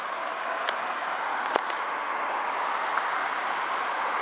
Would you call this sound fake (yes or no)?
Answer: no